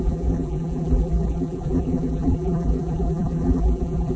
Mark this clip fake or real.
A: fake